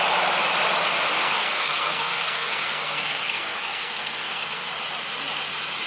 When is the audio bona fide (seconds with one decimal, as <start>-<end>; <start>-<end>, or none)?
0.0-1.2; 4.7-5.9